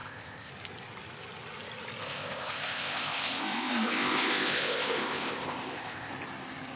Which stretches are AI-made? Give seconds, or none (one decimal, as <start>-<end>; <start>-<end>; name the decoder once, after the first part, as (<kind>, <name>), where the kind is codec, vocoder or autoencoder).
0.0-0.5 (codec, ZipCodec); 2.0-6.1